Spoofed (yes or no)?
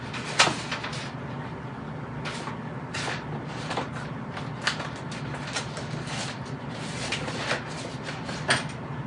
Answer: no